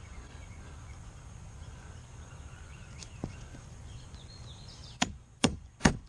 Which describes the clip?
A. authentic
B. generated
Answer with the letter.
B